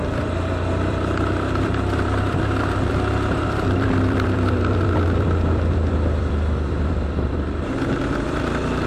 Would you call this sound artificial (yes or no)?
yes